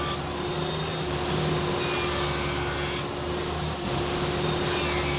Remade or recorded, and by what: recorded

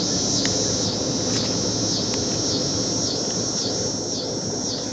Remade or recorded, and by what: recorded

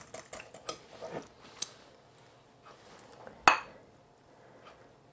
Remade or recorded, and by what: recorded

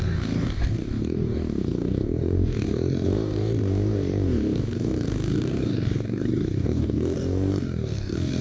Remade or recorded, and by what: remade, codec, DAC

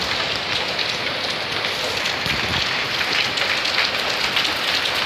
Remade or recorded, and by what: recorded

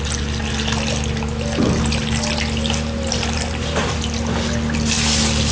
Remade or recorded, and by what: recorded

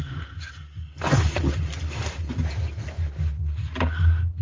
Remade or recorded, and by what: recorded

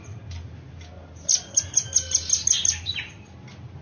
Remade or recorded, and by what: recorded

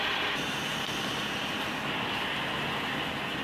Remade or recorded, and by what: recorded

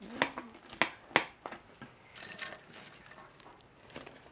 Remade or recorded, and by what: recorded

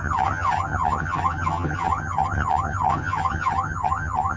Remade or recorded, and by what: remade, vocoder, HiFi-GAN